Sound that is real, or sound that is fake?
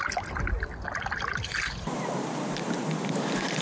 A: real